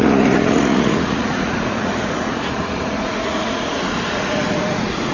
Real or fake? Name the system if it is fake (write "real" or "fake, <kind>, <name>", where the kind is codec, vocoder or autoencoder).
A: fake, vocoder, Vocos